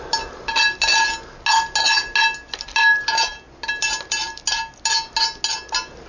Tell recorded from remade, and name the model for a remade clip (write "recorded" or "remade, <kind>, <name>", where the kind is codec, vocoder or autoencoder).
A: recorded